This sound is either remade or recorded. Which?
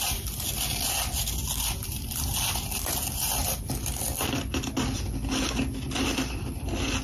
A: recorded